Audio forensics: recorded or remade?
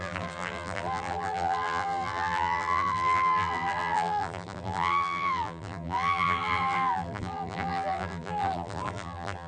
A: remade